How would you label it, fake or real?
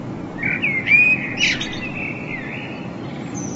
real